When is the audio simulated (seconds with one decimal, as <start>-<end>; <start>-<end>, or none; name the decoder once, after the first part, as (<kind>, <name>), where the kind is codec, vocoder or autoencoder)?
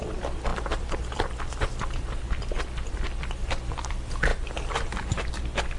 0.5-1.6 (vocoder, BigVGAN v2); 3.4-3.9